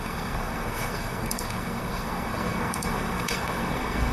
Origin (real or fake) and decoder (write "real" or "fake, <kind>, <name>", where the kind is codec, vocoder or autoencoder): fake, codec, SNAC